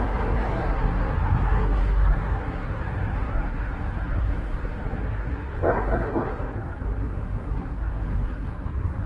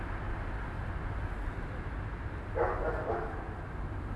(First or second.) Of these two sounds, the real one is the second